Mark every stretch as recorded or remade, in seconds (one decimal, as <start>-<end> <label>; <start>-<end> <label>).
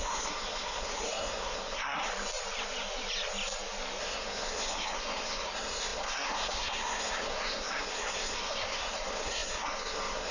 0.0-2.1 remade; 2.1-4.0 recorded; 4.0-10.3 remade